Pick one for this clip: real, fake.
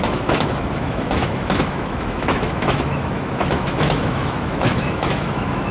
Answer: fake